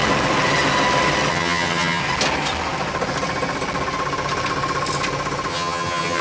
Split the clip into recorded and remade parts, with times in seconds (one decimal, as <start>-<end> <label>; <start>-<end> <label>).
0.0-1.3 recorded; 1.3-2.0 remade; 2.0-5.5 recorded; 5.5-6.2 remade